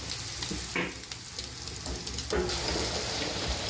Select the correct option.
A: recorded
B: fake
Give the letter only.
A